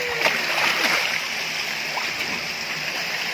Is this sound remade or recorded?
recorded